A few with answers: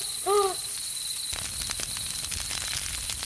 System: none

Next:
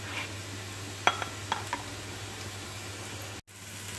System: none